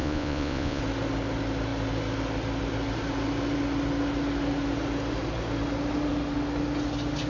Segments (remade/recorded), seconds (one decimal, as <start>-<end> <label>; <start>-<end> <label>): 0.0-0.8 remade; 0.8-7.3 recorded